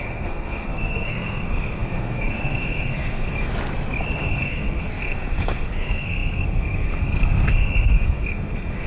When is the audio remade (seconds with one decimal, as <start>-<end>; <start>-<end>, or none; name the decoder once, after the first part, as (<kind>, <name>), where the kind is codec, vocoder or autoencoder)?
0.0-3.5 (codec, SNAC); 4.2-8.9